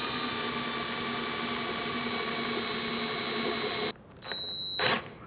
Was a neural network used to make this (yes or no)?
no